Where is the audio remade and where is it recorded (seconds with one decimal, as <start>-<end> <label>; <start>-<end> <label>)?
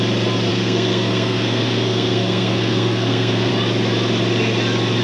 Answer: 0.0-0.5 recorded; 0.5-3.5 remade; 3.5-5.0 recorded